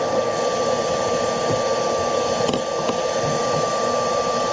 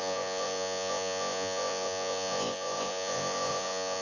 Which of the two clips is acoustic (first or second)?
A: first